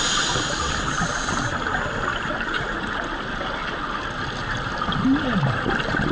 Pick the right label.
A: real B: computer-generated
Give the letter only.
A